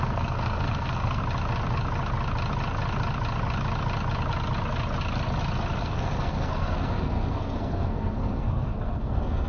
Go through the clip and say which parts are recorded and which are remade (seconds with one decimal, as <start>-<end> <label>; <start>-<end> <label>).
0.0-1.2 remade; 1.2-5.8 recorded; 5.8-9.5 remade